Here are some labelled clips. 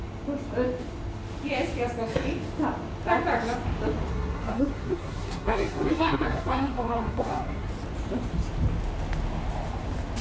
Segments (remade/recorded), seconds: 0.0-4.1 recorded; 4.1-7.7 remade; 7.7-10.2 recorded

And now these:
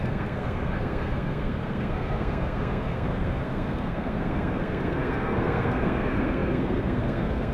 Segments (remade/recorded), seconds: 0.0-7.5 remade

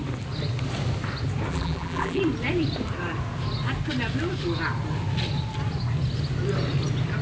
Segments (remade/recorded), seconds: 0.0-1.5 recorded; 1.5-2.2 remade; 2.2-7.2 recorded